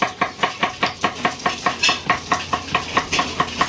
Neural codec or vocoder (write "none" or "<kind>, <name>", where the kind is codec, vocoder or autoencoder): none